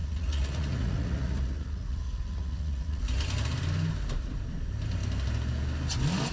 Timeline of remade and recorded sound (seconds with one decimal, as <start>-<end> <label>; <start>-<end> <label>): 0.0-3.0 remade; 3.0-6.3 recorded